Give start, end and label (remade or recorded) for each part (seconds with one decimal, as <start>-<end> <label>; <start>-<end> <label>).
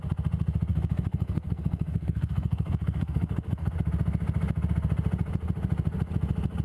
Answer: 0.0-0.7 recorded; 0.7-3.7 remade; 3.7-6.6 recorded